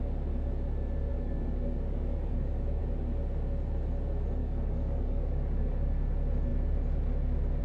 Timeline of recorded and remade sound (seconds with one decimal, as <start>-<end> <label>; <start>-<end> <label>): 0.0-1.1 recorded; 1.1-2.8 remade; 2.8-4.4 recorded; 4.4-5.6 remade; 5.6-7.6 recorded